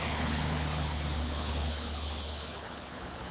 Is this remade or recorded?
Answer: remade